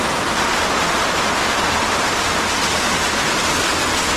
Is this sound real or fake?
real